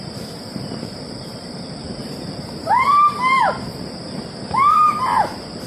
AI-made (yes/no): yes